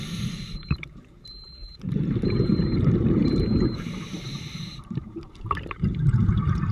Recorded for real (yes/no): no